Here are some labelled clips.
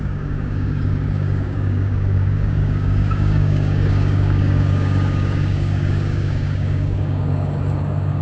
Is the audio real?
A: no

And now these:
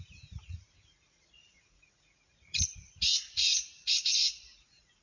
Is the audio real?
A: no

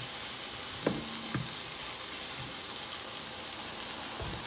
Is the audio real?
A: yes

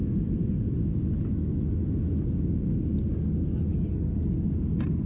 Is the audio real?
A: yes